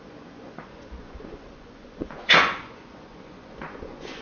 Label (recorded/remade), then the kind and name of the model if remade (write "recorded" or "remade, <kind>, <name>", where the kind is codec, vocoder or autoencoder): remade, vocoder, Vocos